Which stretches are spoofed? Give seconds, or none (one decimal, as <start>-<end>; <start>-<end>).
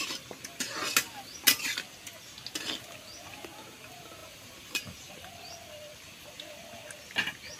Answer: 4.2-5.1